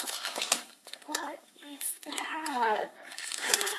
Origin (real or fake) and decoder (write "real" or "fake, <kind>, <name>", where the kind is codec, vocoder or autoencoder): fake, codec, SNAC